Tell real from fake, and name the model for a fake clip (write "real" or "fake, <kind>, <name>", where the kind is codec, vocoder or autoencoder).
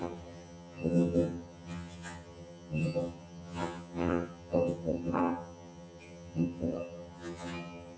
fake, vocoder, HiFi-GAN